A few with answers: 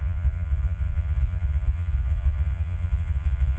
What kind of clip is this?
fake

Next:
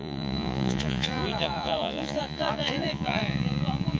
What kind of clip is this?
fake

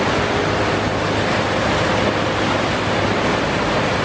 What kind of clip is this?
real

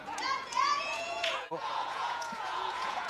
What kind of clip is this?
fake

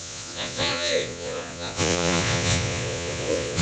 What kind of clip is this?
fake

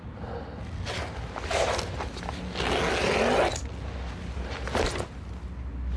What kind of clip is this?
real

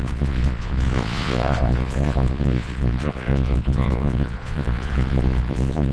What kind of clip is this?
fake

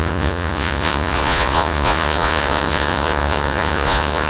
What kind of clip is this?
fake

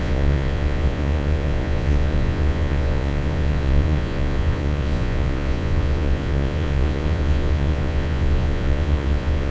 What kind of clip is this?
fake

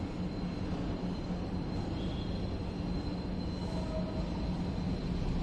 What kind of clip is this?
real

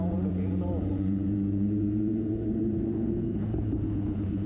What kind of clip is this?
fake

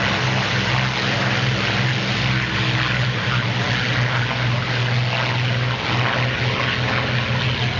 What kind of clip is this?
real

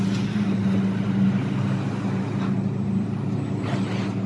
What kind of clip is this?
real